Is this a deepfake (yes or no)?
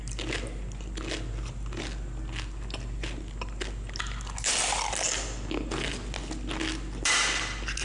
no